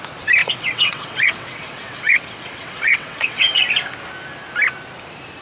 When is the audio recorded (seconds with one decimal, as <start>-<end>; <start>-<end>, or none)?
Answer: 0.0-0.4; 3.6-5.4